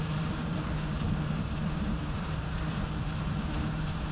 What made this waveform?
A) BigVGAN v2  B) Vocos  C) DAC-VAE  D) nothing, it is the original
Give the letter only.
A